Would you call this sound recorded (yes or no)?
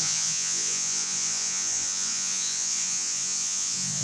no